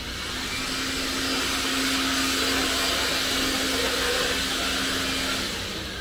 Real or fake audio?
real